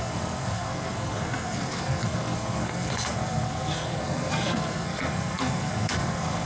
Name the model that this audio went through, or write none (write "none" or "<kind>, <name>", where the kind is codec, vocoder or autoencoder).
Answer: codec, SNAC